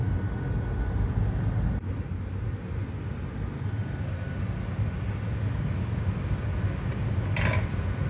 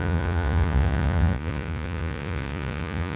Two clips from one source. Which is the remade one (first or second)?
second